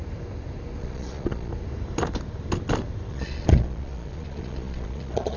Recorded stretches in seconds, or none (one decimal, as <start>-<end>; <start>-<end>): 0.0-0.8; 1.5-3.1